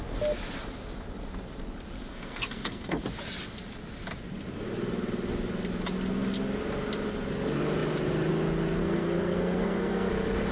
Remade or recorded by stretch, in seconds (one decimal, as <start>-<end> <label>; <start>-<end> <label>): 0.0-2.1 recorded; 2.1-3.0 remade; 3.0-8.8 recorded; 8.8-10.1 remade; 10.1-10.5 recorded

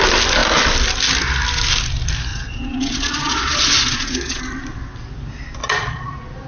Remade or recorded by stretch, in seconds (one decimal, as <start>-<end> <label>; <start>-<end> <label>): 0.0-2.3 recorded; 2.3-4.4 remade; 4.4-5.6 recorded; 5.6-6.1 remade; 6.1-6.5 recorded

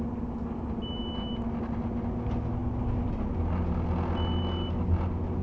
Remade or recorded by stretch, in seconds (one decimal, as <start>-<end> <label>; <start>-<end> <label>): 0.0-5.4 recorded

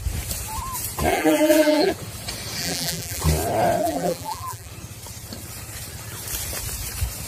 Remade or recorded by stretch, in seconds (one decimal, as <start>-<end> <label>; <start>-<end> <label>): 0.0-1.1 recorded; 1.1-1.9 remade; 1.9-2.6 recorded; 2.6-3.2 remade; 3.2-3.8 recorded; 3.8-4.7 remade; 4.7-7.3 recorded

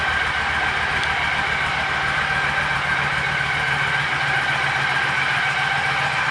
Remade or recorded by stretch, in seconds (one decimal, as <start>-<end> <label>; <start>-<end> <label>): 0.0-6.3 recorded

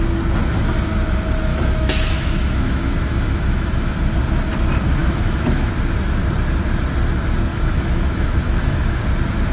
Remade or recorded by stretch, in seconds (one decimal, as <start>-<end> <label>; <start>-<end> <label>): 0.0-1.5 recorded; 1.5-3.9 remade; 3.9-5.0 recorded; 5.0-5.7 remade; 5.7-7.5 recorded; 7.5-9.0 remade; 9.0-9.5 recorded

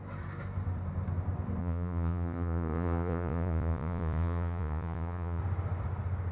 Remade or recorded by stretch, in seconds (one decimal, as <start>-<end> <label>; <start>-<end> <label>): 0.0-1.6 recorded; 1.6-5.4 remade; 5.4-6.3 recorded